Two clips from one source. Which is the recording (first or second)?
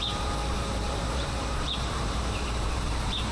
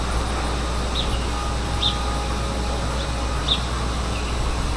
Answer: second